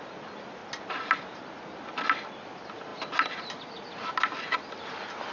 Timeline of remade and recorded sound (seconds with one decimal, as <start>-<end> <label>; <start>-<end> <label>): 0.0-5.3 recorded